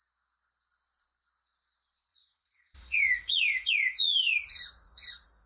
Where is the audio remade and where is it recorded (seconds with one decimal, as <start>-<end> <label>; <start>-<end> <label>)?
0.0-2.1 recorded; 2.1-5.5 remade